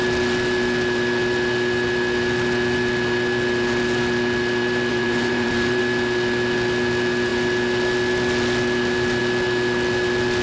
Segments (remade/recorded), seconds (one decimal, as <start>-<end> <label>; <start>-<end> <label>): 0.0-4.9 recorded; 4.9-5.8 remade; 5.8-10.4 recorded